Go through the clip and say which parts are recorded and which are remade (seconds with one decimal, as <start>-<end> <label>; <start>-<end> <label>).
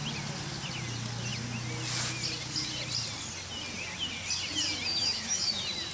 0.0-5.0 recorded; 5.0-5.5 remade; 5.5-5.9 recorded